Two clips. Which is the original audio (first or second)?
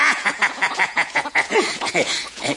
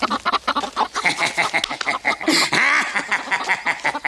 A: second